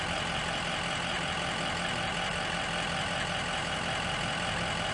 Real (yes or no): yes